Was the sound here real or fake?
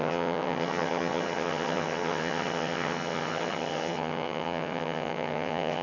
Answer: fake